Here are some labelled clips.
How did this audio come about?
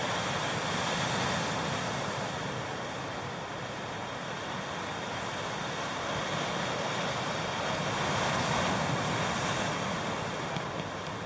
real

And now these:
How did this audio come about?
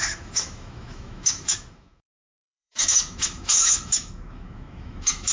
fake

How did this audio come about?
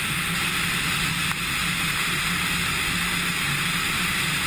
real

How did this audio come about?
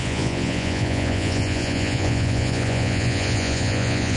fake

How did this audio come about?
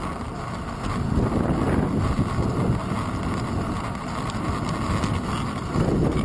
real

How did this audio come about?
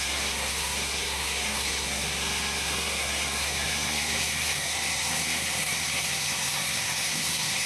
fake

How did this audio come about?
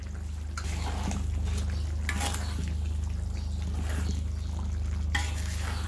real